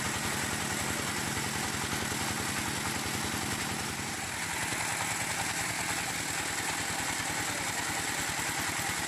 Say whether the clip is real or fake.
real